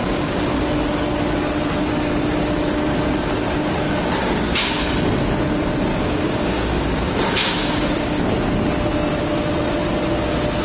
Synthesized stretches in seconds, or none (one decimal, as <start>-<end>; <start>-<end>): 4.2-4.8; 5.9-8.2